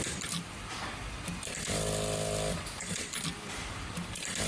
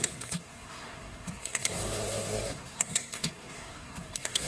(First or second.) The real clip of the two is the first